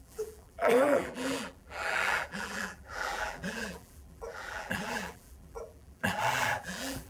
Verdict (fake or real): fake